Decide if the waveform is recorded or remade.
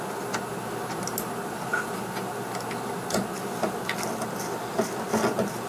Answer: recorded